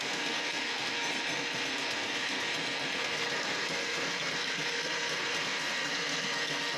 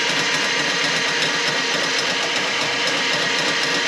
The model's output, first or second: first